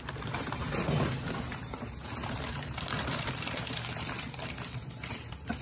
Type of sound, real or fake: fake